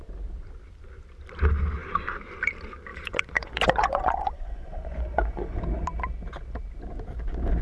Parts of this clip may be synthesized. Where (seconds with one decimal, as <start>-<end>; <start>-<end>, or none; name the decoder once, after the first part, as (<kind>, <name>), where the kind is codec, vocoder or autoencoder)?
2.9-5.6 (vocoder, Vocos)

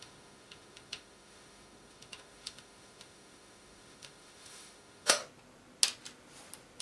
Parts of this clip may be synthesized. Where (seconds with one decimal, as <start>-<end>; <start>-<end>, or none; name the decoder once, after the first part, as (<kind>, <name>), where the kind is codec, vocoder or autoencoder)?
0.0-5.2 (autoencoder, DAC-VAE)

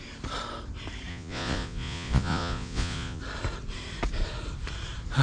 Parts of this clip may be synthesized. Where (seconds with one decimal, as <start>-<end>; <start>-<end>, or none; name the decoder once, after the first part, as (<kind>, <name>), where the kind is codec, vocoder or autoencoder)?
1.1-3.2 (vocoder, Vocos)

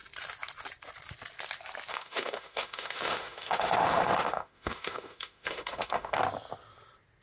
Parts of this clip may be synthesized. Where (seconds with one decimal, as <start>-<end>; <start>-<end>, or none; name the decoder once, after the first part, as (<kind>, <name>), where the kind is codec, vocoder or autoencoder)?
1.9-6.2 (autoencoder, DAC-VAE)

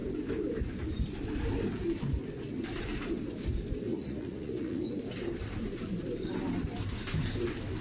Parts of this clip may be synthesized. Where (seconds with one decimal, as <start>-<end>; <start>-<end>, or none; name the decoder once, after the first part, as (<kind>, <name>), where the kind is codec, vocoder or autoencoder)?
3.9-4.8 (vocoder, Vocos)